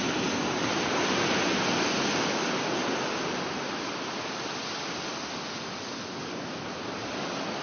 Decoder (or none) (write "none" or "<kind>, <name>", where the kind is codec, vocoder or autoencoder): none